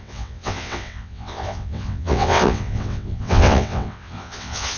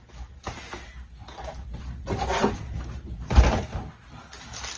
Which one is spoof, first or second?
first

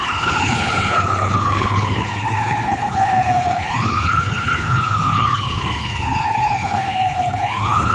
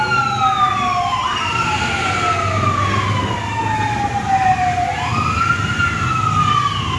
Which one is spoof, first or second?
first